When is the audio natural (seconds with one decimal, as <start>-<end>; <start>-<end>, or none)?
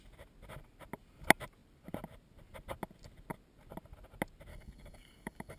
0.0-4.5